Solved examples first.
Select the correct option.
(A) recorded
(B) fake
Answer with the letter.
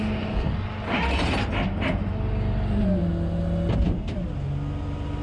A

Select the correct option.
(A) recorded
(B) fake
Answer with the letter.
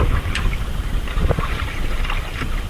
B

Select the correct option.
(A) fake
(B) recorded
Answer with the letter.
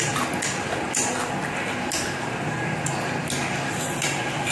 B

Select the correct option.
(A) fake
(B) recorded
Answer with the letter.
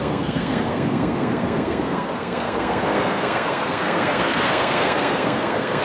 A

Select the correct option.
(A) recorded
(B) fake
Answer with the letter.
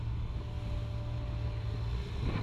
A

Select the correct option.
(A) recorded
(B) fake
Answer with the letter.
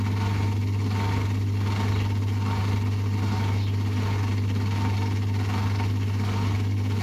A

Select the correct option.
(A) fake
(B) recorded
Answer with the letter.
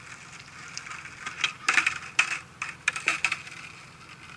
B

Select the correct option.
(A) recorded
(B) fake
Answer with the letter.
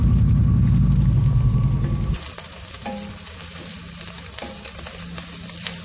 A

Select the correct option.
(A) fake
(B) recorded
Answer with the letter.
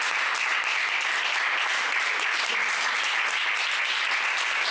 B